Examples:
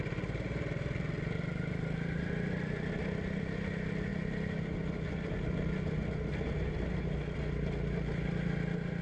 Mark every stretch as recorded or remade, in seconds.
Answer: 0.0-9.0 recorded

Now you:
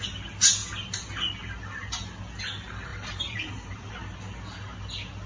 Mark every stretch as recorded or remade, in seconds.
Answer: 0.0-2.9 recorded; 2.9-3.9 remade; 3.9-5.3 recorded

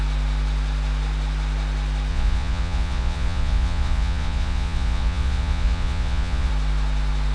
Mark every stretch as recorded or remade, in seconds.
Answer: 0.0-2.1 recorded; 2.1-6.5 remade; 6.5-7.3 recorded

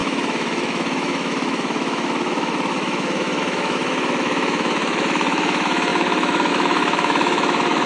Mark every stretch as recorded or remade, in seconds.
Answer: 0.0-7.9 remade

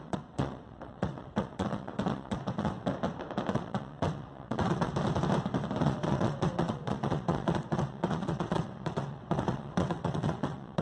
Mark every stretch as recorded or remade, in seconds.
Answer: 0.0-2.9 remade; 2.9-3.5 recorded; 3.5-4.9 remade; 4.9-5.8 recorded; 5.8-10.8 remade

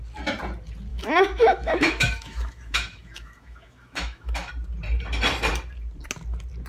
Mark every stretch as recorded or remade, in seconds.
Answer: 0.0-0.9 recorded; 0.9-4.5 remade; 4.5-6.7 recorded

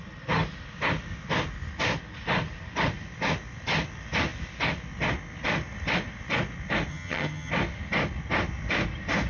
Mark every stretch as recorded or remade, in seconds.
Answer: 0.0-6.9 recorded; 6.9-7.5 remade; 7.5-9.3 recorded

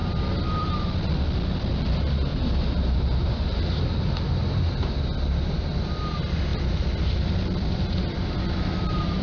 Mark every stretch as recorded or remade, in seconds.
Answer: 0.0-1.7 remade; 1.7-2.3 recorded; 2.3-4.8 remade; 4.8-6.5 recorded; 6.5-9.2 remade